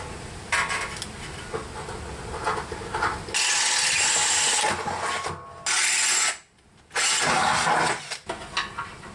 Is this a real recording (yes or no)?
yes